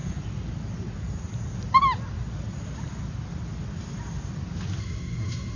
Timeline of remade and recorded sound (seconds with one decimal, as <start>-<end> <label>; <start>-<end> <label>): 0.0-4.8 recorded; 4.8-5.6 remade

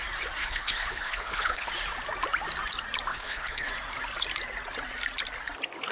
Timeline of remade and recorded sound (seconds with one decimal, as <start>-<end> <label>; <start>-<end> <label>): 0.0-0.4 recorded; 0.4-1.7 remade; 1.7-3.1 recorded; 3.1-3.7 remade; 3.7-5.9 recorded

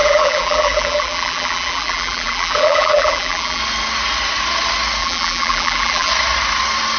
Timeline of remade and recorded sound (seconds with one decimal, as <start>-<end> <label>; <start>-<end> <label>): 0.0-3.6 remade; 3.6-5.0 recorded; 5.0-6.1 remade; 6.1-7.0 recorded

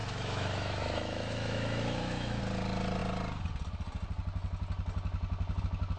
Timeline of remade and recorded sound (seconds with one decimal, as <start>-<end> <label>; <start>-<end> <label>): 0.0-2.4 remade; 2.4-6.0 recorded

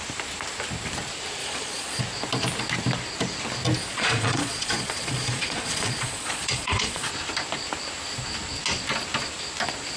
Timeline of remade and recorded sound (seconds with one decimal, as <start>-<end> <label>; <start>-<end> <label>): 0.0-1.4 recorded; 1.4-2.0 remade; 2.0-3.9 recorded; 3.9-7.1 remade; 7.1-10.0 recorded

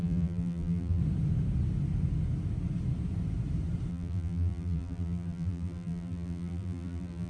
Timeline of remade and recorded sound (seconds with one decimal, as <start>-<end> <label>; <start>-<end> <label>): 0.0-1.0 remade; 1.0-3.9 recorded; 3.9-7.3 remade

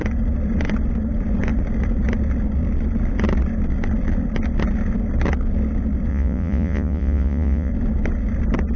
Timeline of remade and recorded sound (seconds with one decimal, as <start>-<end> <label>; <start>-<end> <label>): 0.0-6.1 recorded; 6.1-7.7 remade; 7.7-8.8 recorded

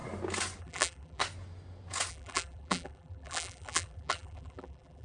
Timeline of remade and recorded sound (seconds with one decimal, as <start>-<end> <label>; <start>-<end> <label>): 0.0-0.6 recorded; 0.6-1.2 remade; 1.2-2.1 recorded; 2.1-5.0 remade